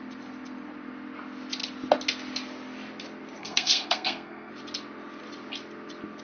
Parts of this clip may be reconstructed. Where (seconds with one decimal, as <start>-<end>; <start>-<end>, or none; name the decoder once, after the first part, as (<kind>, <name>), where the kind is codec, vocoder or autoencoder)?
3.4-4.5 (codec, SNAC)